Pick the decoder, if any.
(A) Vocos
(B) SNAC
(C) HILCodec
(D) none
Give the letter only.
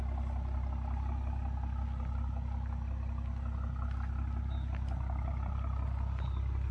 D